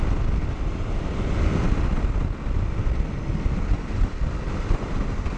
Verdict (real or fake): real